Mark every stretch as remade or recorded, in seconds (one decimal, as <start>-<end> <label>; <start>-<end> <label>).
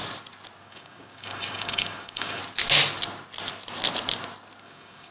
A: 0.0-0.6 recorded; 0.6-2.4 remade; 2.4-4.6 recorded; 4.6-5.1 remade